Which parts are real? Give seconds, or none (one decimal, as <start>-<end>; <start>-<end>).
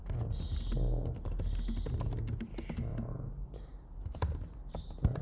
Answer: 0.0-2.9